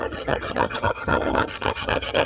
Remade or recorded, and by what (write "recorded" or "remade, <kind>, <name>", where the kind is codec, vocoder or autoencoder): remade, vocoder, HiFi-GAN